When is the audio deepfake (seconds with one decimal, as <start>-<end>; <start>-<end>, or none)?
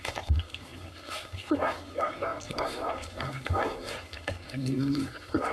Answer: 0.0-5.5